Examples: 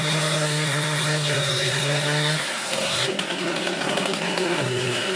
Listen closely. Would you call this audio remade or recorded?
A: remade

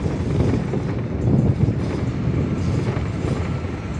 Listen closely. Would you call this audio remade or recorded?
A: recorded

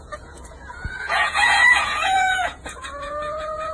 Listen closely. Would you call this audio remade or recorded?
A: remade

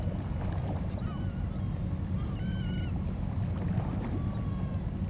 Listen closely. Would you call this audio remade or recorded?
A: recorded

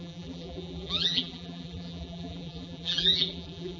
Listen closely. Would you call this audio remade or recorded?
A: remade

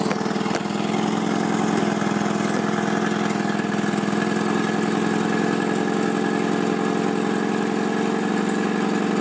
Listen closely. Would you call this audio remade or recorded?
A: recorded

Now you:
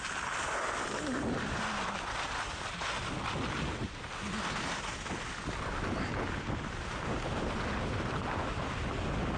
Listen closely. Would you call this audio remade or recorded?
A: recorded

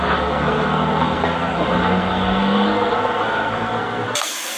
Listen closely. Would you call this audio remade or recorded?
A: remade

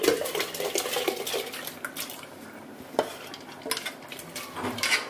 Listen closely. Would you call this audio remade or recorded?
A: recorded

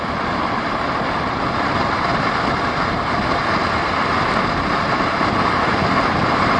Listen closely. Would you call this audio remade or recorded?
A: remade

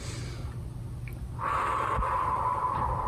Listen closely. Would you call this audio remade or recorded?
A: recorded